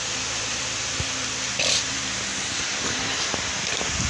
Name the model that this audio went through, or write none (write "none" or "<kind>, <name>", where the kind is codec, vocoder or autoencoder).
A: vocoder, BigVGAN v2